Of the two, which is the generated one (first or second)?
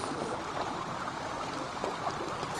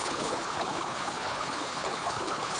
second